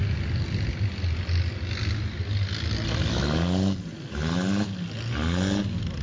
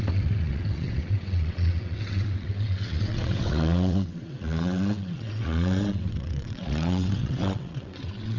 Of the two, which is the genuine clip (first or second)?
first